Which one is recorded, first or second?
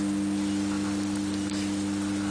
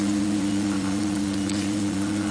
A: first